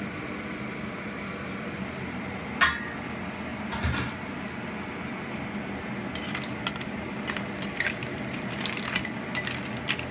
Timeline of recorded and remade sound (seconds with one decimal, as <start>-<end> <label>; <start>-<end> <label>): 0.0-3.5 recorded; 3.5-4.7 remade; 4.7-10.1 recorded